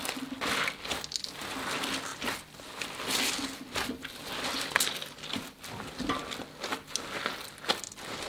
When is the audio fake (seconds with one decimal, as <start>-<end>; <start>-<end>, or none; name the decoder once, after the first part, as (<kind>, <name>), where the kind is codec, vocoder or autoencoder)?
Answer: none